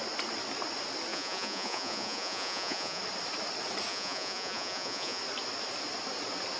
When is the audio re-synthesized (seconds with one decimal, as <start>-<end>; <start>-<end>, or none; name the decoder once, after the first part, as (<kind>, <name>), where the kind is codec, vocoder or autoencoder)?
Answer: 1.1-3.0 (vocoder, Vocos); 3.9-5.2